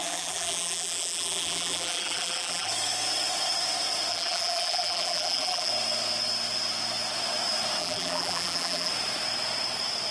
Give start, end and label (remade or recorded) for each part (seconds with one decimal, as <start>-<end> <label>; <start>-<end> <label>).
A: 0.0-2.7 remade; 2.7-4.1 recorded; 4.1-5.7 remade; 5.7-7.8 recorded; 7.8-8.9 remade; 8.9-10.1 recorded